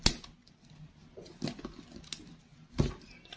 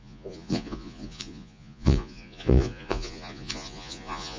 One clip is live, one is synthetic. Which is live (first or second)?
first